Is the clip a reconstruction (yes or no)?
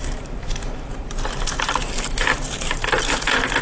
yes